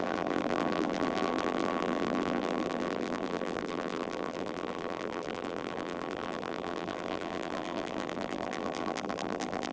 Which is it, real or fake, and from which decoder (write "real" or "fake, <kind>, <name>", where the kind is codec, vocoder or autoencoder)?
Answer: fake, vocoder, BigVGAN v2